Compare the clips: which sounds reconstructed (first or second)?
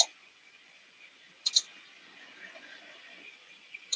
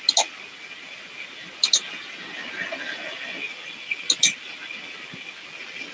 first